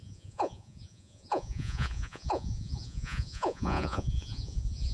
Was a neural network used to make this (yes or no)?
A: yes